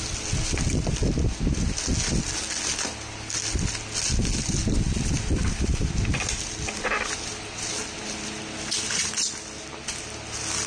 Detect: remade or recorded recorded